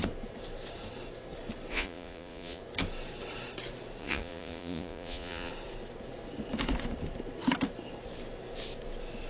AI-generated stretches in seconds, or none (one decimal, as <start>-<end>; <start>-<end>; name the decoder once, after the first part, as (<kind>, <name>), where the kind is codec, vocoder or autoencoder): 1.7-2.6 (vocoder, Vocos); 4.0-5.5